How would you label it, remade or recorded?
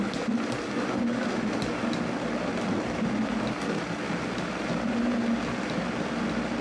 recorded